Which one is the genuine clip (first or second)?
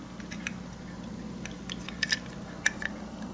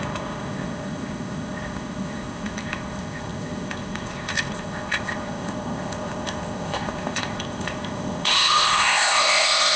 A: first